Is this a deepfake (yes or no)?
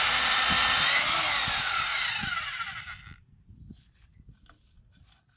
no